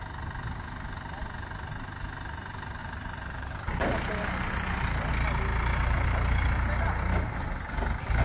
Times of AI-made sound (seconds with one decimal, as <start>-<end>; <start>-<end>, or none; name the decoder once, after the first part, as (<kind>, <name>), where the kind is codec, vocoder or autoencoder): 2.8-5.1 (vocoder, BigVGAN v2)